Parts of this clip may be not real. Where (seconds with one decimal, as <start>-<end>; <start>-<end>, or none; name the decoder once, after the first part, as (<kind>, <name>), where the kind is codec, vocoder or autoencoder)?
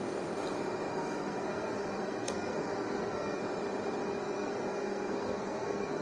0.9-3.4 (codec, SNAC); 4.0-6.0